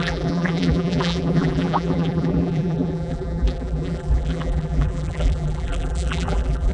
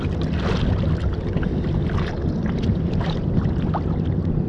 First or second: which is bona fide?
second